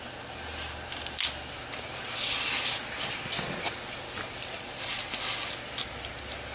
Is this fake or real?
real